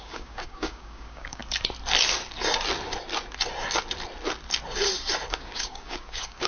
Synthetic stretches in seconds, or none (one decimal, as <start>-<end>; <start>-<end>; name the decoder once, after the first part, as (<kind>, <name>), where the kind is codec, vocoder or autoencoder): 0.0-1.4 (codec, DAC); 5.3-6.5